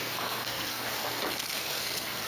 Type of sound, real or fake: fake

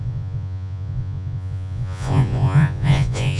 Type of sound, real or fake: fake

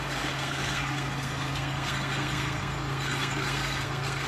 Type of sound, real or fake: fake